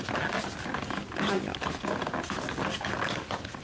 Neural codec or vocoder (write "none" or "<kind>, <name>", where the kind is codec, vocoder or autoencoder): none